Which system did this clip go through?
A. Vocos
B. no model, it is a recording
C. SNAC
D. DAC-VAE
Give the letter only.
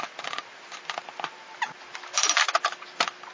B